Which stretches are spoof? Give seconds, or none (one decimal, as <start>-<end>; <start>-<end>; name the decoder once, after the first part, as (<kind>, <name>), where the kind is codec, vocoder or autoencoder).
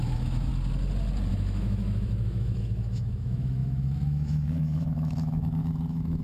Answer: 0.0-0.5 (autoencoder, DAC-VAE); 1.3-6.2